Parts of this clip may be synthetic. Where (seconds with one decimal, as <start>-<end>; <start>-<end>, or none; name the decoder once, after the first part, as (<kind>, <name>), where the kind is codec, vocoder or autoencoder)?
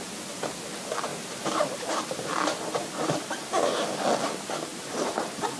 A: 1.1-3.9 (vocoder, BigVGAN v2); 4.7-5.6